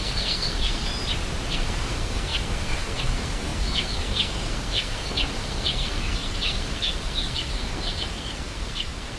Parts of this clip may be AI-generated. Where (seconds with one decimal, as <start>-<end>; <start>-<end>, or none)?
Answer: 0.0-0.9; 1.5-9.2